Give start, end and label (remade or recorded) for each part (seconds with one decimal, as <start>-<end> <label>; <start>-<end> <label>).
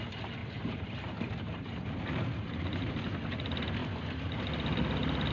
0.0-0.4 recorded; 0.4-3.0 remade; 3.0-5.3 recorded